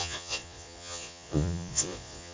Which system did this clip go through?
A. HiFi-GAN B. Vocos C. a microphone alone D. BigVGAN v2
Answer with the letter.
B